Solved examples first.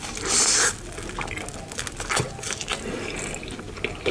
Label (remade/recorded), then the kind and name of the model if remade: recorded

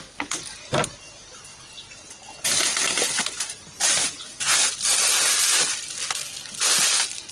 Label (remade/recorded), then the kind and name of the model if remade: recorded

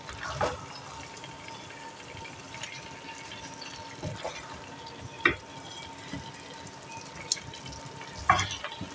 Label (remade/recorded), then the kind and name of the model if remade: recorded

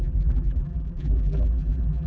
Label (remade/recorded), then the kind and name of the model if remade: remade, vocoder, BigVGAN v2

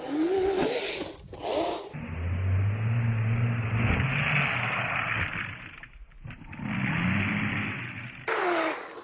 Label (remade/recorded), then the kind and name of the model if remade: recorded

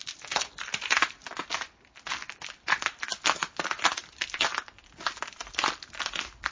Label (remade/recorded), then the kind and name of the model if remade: recorded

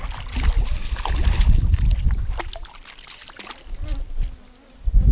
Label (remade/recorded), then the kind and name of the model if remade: recorded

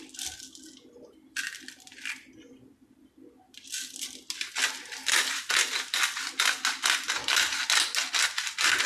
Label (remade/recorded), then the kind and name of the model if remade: recorded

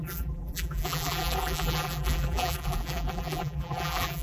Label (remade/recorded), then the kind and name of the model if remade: remade, vocoder, BigVGAN v2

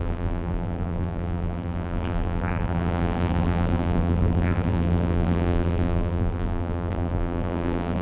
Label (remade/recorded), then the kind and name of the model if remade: remade, vocoder, BigVGAN v2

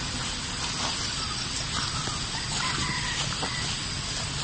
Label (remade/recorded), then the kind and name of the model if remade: recorded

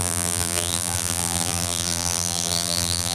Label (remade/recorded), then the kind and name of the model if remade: remade, vocoder, BigVGAN v2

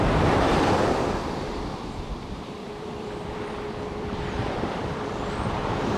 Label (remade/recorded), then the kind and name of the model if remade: remade, vocoder, BigVGAN v2